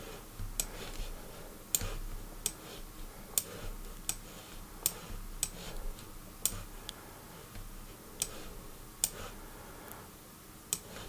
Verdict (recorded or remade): recorded